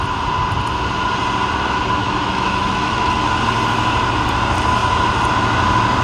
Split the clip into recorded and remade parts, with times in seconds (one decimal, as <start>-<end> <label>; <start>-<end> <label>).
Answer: 0.0-2.0 recorded; 2.0-3.4 remade; 3.4-6.0 recorded